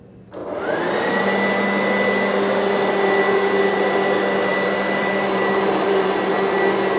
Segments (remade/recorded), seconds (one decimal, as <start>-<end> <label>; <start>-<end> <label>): 0.0-0.4 recorded; 0.4-1.2 remade; 1.2-4.5 recorded; 4.5-6.3 remade; 6.3-7.0 recorded